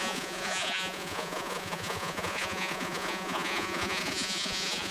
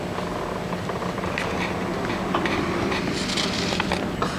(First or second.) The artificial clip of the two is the first